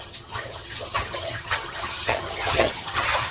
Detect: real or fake fake